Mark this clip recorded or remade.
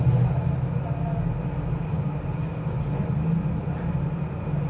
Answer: recorded